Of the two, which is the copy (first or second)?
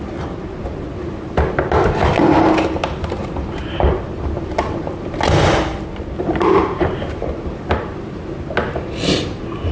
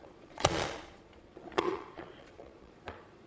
second